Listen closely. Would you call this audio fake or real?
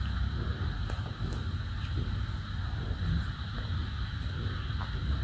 real